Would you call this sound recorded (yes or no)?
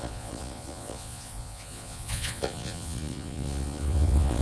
no